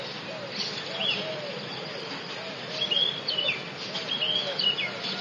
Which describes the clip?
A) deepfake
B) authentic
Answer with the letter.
B